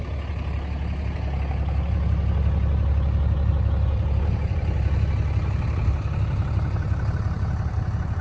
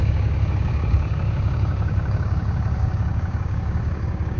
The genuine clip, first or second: first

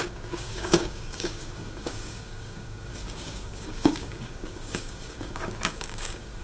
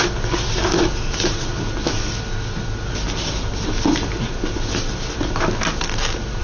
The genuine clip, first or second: second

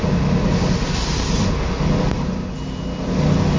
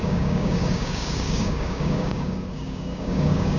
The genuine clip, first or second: first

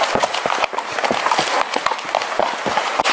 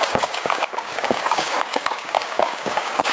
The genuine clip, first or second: first